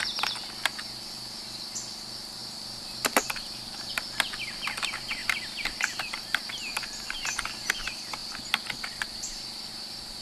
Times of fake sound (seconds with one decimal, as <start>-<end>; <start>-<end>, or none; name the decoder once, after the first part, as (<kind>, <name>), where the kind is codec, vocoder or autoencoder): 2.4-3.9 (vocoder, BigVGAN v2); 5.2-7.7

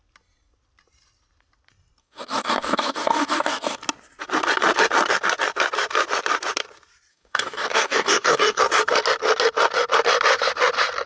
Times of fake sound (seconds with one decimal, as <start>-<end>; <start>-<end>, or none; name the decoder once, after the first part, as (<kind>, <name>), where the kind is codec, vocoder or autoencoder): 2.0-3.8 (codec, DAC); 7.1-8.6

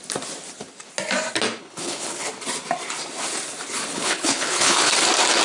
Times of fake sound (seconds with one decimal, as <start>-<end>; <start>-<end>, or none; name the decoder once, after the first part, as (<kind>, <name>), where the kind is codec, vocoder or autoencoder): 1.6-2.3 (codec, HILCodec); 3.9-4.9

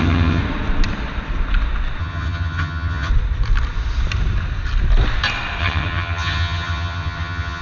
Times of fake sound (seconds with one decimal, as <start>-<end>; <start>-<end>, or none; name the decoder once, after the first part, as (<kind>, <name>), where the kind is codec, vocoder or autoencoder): 0.0-0.4 (vocoder, HiFi-GAN); 2.0-3.1; 5.6-7.6

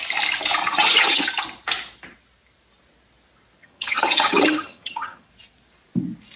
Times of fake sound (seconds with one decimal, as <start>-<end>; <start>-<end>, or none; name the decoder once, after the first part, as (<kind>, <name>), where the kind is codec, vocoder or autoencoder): 0.6-1.3 (vocoder, HiFi-GAN); 3.6-5.3